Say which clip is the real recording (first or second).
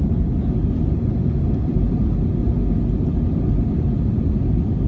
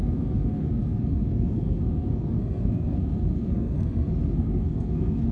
first